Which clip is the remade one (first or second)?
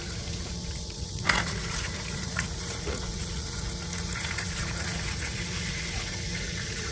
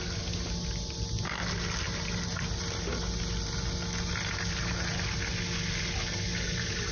first